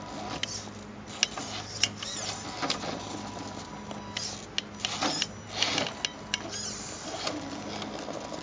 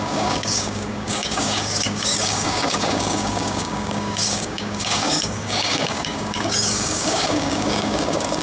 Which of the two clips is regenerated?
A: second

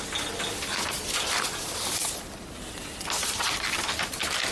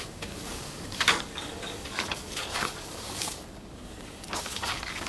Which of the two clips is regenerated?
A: second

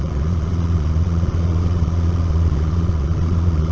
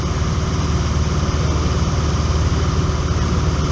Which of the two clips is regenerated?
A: first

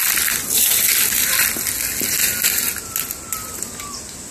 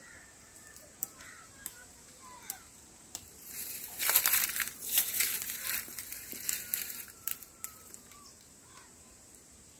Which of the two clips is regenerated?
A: second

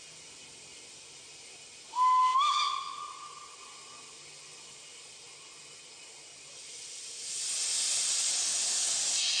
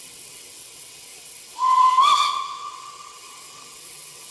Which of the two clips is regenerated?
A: second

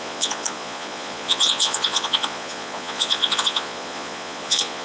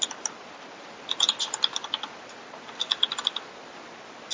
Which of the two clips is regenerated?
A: first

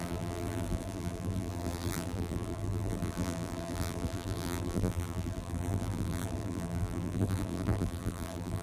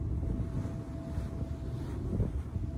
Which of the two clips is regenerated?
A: first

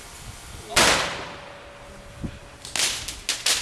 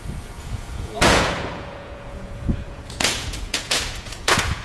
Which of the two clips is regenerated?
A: second